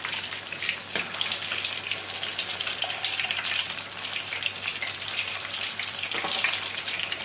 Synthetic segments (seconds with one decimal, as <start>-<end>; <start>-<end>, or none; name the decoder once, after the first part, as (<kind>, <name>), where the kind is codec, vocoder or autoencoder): 2.3-3.0 (vocoder, BigVGAN v2); 4.7-6.3